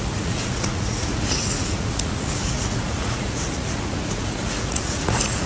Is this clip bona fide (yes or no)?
no